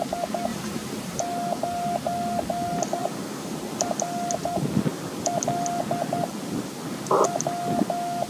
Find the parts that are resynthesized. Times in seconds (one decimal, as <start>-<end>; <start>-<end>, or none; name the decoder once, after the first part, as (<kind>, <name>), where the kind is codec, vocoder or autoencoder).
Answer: 0.5-1.2 (vocoder, BigVGAN v2); 3.0-3.9; 4.9-5.4